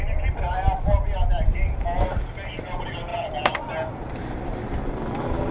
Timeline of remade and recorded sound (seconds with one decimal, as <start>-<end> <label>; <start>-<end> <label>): 0.0-5.5 recorded